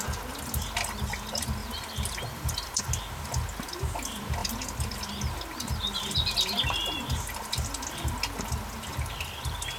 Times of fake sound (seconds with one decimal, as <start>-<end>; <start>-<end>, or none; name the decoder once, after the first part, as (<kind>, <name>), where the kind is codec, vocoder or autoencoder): 1.6-2.8 (vocoder, BigVGAN v2); 4.4-5.2